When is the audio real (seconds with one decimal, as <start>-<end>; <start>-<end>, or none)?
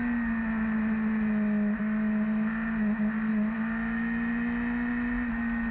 0.0-5.7